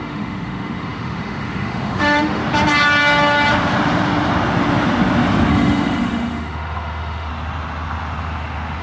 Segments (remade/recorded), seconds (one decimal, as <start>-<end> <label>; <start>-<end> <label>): 0.0-2.4 remade; 2.4-5.5 recorded; 5.5-7.3 remade; 7.3-8.8 recorded